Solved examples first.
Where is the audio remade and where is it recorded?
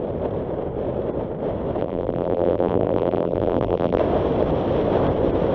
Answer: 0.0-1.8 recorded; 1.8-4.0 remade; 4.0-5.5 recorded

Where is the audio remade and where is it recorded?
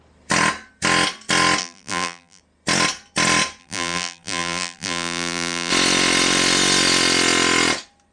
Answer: 0.0-1.6 recorded; 1.6-2.4 remade; 2.4-3.6 recorded; 3.6-5.7 remade; 5.7-8.1 recorded